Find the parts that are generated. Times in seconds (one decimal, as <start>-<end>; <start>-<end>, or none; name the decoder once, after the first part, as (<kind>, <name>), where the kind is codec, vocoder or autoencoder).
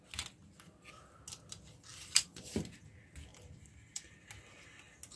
1.9-2.8 (vocoder, BigVGAN v2); 3.3-4.1